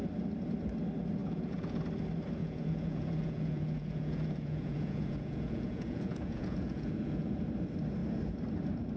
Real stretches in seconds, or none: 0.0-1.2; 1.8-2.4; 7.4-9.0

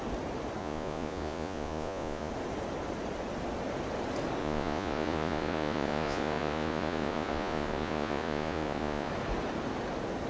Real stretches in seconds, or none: 0.0-0.6; 2.3-4.4; 9.1-10.3

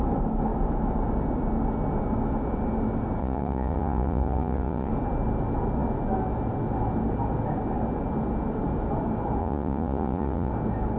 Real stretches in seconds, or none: 0.0-3.2; 4.9-9.4; 10.5-11.0

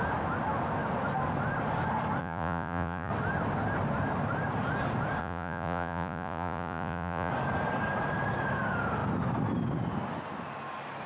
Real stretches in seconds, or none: 0.0-2.2; 3.1-5.2; 7.3-11.1